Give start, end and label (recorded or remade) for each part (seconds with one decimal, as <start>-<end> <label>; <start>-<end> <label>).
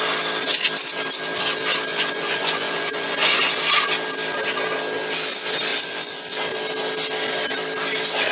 0.0-1.9 recorded; 1.9-3.4 remade; 3.4-5.7 recorded; 5.7-6.2 remade; 6.2-8.3 recorded